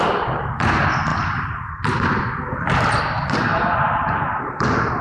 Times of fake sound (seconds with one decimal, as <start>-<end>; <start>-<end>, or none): 1.1-3.0; 3.5-4.1